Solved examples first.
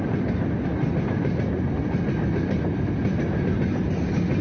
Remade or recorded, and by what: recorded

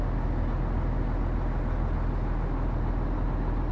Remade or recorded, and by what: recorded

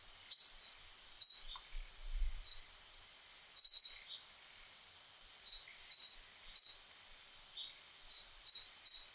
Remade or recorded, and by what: recorded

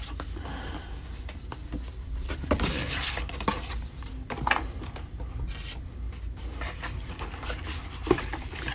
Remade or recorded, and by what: recorded